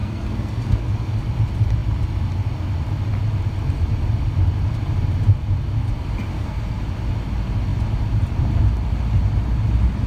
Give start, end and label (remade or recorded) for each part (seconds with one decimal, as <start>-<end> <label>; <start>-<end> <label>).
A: 0.0-1.2 remade; 1.2-6.3 recorded; 6.3-6.8 remade; 6.8-10.1 recorded